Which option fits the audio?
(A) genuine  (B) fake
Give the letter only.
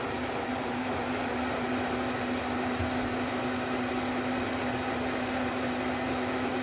A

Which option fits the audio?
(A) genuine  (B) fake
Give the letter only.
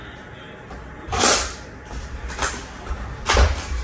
A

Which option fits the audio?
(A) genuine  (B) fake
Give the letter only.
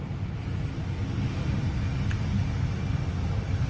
A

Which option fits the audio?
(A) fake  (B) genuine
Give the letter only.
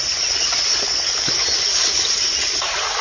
B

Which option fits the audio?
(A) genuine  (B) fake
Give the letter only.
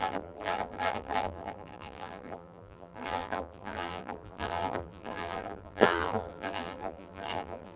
B